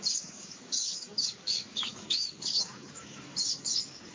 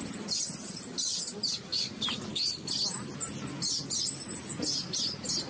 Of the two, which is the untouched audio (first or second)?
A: second